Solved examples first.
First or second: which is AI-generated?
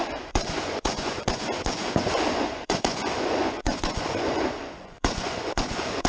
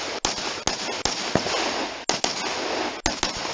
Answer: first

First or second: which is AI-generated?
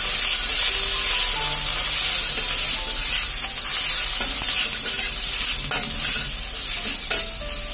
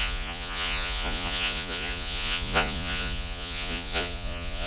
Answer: second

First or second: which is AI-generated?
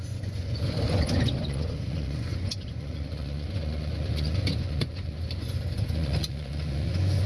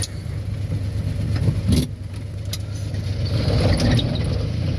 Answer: first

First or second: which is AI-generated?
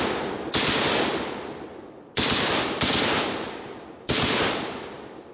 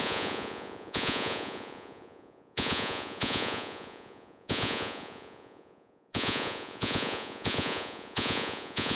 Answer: second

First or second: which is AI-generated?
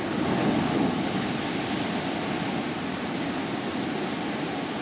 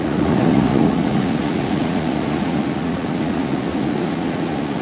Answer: second